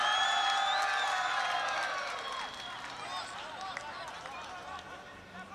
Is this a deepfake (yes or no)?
no